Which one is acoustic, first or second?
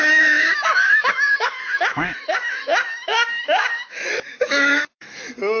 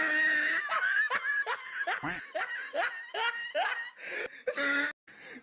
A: second